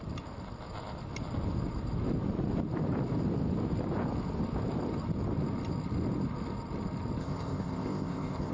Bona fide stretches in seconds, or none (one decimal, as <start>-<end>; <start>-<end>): 0.0-7.2